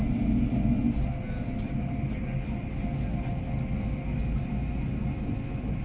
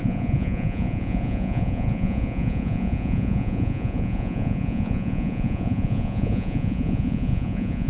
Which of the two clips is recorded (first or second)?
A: first